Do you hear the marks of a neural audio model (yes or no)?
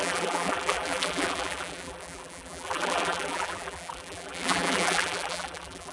yes